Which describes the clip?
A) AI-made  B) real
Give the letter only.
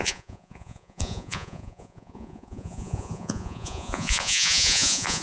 A